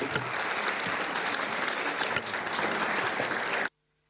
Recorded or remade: recorded